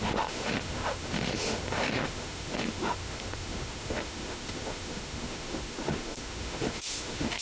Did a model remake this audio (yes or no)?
yes